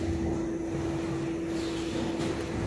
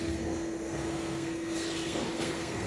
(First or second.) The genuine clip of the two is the first